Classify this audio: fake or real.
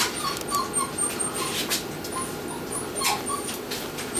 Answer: real